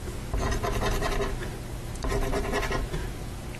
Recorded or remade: recorded